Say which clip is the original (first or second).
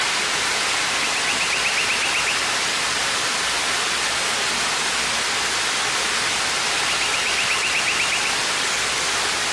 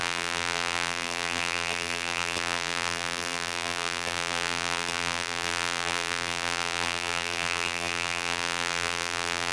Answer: first